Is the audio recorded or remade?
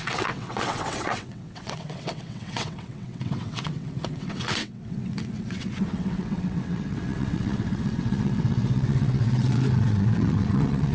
remade